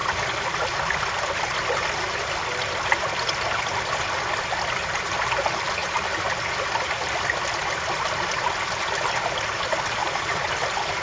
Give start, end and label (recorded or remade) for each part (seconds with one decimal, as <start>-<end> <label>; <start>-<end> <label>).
0.0-10.0 recorded; 10.0-10.5 remade; 10.5-11.0 recorded